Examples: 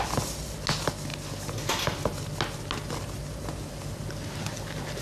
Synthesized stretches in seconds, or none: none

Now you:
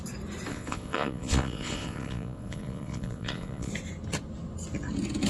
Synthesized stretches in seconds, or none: 0.5-3.7 (vocoder, Vocos)